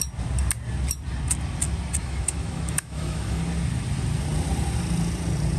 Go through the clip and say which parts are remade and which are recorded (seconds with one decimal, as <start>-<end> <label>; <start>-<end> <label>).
0.0-2.0 recorded; 2.0-3.4 remade; 3.4-5.6 recorded